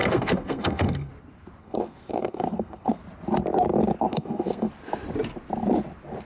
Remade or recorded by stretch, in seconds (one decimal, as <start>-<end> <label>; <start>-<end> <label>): 0.0-1.1 remade; 1.1-1.6 recorded; 1.6-3.0 remade; 3.0-4.1 recorded; 4.1-4.7 remade; 4.7-6.2 recorded